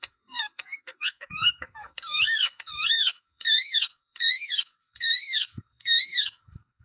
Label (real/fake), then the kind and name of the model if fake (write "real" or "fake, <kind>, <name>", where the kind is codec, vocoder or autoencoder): fake, codec, SNAC